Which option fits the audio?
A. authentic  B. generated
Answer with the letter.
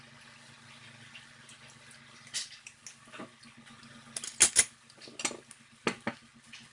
A